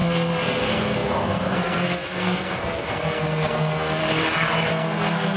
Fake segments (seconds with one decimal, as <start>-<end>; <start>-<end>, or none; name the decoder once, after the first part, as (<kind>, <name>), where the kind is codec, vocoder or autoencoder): 0.0-4.0 (codec, SNAC); 4.7-5.4